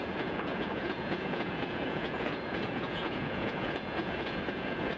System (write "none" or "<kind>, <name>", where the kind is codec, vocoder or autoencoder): vocoder, Vocos